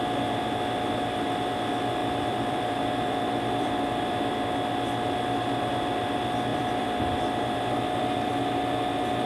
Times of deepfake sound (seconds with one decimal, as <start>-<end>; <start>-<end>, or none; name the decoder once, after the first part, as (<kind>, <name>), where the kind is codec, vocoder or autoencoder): 2.0-4.3 (vocoder, BigVGAN v2); 6.5-8.4